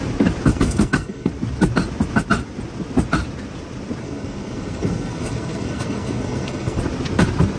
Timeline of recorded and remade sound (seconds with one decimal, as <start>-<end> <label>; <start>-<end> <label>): 0.0-0.5 recorded; 0.5-1.3 remade; 1.3-4.0 recorded; 4.0-6.8 remade; 6.8-7.6 recorded

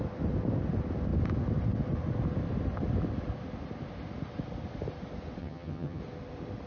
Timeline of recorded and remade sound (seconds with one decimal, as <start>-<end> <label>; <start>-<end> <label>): 0.0-5.4 recorded; 5.4-6.0 remade; 6.0-6.7 recorded

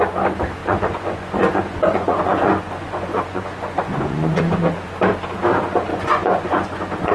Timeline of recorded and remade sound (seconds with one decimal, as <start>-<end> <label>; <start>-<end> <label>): 0.0-0.6 recorded; 0.6-4.4 remade; 4.4-5.9 recorded; 5.9-7.1 remade

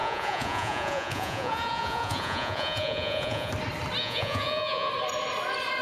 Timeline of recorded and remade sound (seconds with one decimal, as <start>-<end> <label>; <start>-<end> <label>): 0.0-3.5 remade; 3.5-4.0 recorded; 4.0-4.9 remade; 4.9-5.8 recorded

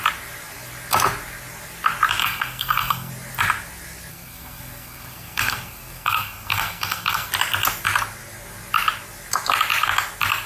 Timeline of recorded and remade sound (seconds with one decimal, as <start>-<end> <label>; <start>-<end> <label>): 0.0-2.2 recorded; 2.2-3.1 remade; 3.1-4.1 recorded; 4.1-7.3 remade; 7.3-10.5 recorded